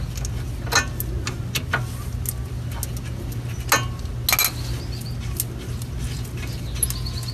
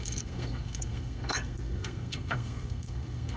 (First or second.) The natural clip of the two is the first